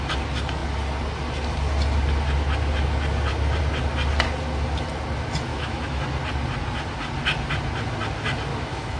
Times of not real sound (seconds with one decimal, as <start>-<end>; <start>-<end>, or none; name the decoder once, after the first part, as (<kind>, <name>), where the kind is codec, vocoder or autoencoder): 5.5-6.0 (autoencoder, DAC-VAE); 8.5-9.0